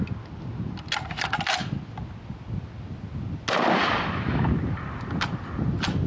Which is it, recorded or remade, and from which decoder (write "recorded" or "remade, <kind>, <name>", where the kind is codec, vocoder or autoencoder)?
recorded